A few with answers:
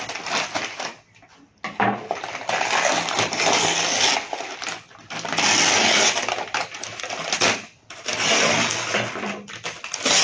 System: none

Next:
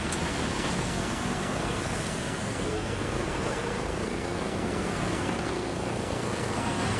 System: codec, SNAC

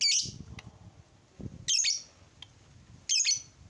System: none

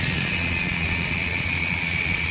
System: vocoder, Vocos